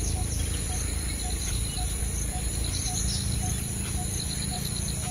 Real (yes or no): no